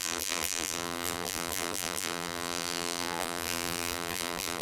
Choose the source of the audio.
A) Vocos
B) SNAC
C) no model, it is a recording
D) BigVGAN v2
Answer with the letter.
D